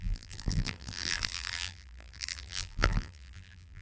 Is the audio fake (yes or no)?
yes